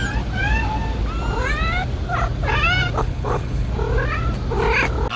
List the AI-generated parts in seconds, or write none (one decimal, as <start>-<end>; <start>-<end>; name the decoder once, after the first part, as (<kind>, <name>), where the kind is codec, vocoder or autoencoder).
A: 3.0-3.7 (codec, HILCodec)